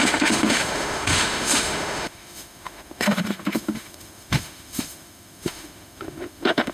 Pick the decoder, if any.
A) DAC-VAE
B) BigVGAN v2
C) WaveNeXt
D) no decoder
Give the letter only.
A